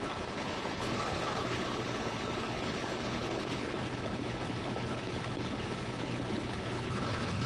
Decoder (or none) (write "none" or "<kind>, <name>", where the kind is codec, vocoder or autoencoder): codec, HILCodec